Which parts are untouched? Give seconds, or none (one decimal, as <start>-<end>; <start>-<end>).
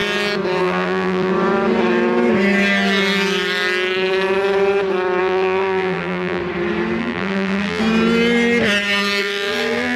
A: 0.0-0.6; 1.3-5.2; 6.4-7.0; 7.8-9.2